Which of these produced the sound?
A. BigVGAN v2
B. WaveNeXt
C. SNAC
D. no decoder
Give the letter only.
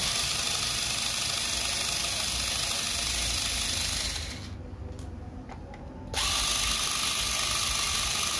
D